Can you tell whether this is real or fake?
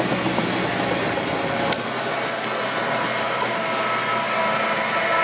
real